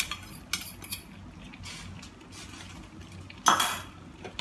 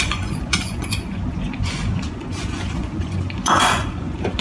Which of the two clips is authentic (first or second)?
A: first